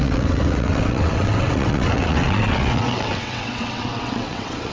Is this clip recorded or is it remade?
remade